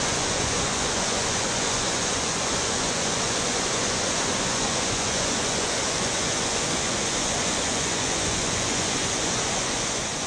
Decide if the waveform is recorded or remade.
remade